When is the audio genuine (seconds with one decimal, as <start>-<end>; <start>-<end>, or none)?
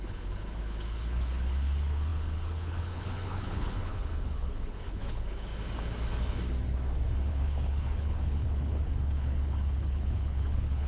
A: 5.5-7.3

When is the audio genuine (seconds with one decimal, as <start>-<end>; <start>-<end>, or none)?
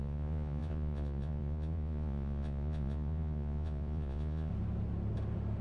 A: 4.5-5.6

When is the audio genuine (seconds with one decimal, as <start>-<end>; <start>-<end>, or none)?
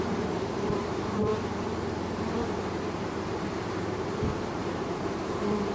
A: 1.3-2.2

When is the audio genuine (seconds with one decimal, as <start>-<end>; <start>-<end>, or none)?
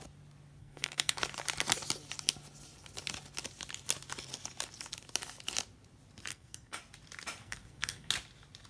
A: 0.0-0.6; 1.2-6.3; 6.8-7.4; 8.1-8.7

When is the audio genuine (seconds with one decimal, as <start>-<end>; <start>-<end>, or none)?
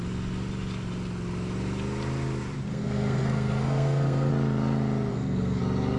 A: 0.0-2.7; 4.3-5.1; 5.6-6.0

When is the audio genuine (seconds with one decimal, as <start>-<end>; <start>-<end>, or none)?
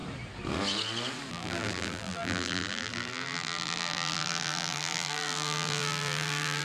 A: 0.0-1.3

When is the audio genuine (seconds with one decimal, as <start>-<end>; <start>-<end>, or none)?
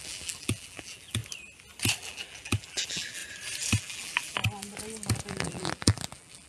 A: 1.2-2.0; 3.2-3.8; 4.4-5.3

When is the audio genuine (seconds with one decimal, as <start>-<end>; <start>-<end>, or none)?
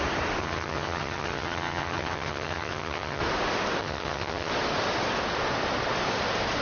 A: 0.0-0.4; 3.2-3.8; 4.5-6.6